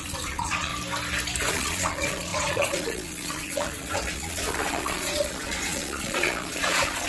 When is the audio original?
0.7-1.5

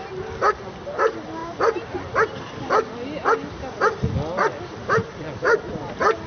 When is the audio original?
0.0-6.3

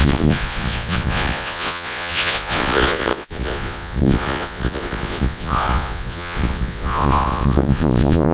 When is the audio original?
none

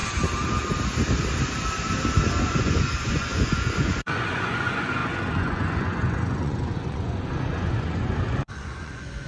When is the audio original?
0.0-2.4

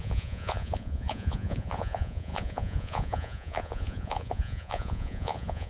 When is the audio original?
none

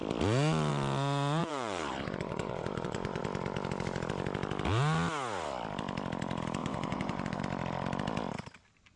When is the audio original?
0.0-1.4; 3.2-6.6; 7.4-9.0

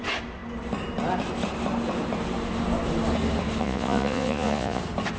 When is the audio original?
0.0-3.6; 4.8-5.2

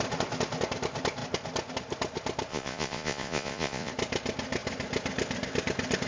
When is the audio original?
0.0-2.5; 3.9-6.1